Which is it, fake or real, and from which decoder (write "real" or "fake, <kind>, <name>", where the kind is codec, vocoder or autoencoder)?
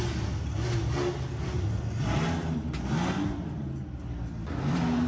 real